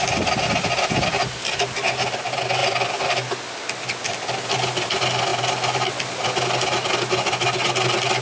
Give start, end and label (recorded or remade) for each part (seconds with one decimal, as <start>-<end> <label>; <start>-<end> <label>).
0.0-8.2 recorded